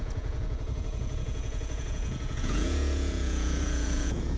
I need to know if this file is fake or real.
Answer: fake